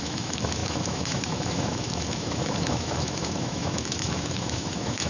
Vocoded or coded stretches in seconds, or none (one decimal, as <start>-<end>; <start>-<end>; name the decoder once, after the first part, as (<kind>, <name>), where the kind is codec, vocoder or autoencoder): 0.0-5.1 (autoencoder, DAC-VAE)